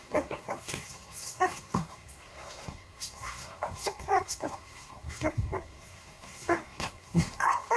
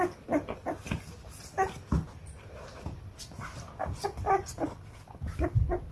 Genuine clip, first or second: second